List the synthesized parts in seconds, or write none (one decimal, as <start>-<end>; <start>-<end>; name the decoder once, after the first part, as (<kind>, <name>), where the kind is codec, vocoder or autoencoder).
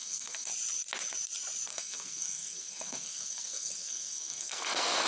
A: 0.0-0.5 (codec, SNAC); 1.7-5.1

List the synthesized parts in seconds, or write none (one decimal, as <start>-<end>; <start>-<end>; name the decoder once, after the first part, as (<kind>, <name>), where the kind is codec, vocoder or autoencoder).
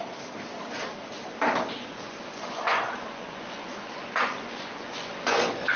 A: 1.9-5.8 (vocoder, Vocos)